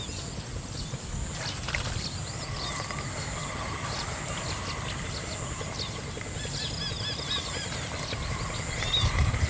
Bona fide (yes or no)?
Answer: yes